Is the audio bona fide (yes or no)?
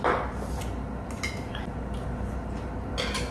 yes